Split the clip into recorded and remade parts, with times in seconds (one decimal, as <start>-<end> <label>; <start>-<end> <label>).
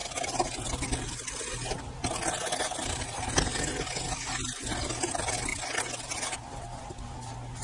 0.0-7.6 recorded